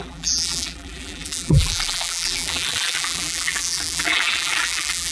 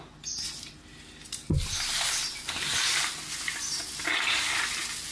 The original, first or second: second